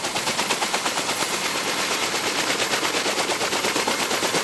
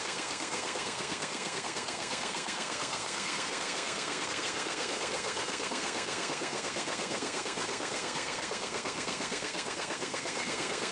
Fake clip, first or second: second